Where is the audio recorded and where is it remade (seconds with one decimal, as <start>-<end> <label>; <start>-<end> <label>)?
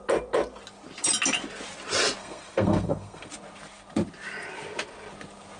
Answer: 0.0-2.2 recorded; 2.2-3.3 remade; 3.3-5.6 recorded